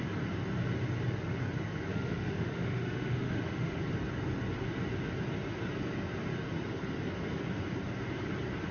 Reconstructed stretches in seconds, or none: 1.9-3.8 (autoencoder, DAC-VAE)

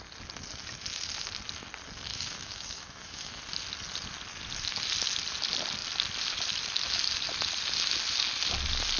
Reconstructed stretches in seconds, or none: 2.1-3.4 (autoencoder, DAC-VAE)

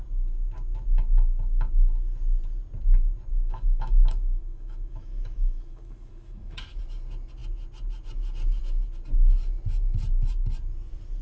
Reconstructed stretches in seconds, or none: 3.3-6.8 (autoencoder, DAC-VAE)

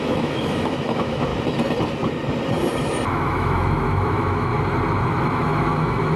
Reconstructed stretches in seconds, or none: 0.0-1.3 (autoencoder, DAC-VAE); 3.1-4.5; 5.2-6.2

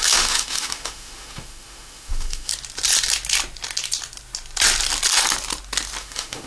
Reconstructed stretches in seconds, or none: 0.0-2.5 (autoencoder, DAC-VAE); 6.0-6.5